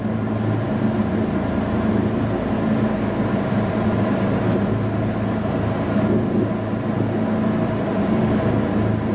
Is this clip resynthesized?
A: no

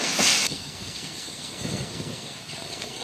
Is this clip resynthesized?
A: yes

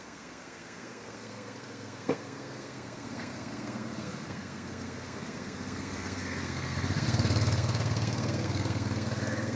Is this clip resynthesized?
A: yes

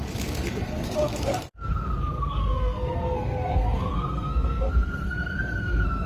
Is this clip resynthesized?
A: yes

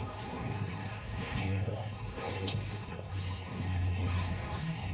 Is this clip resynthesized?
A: yes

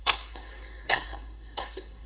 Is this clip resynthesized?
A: yes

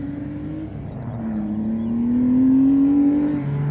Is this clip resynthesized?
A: no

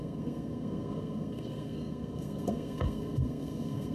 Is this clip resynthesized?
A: yes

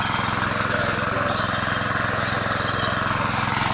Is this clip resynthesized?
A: no